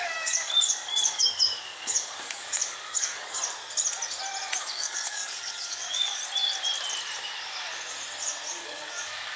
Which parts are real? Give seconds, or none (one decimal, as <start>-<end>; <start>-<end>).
3.4-4.6; 6.2-8.5